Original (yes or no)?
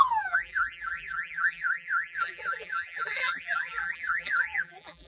no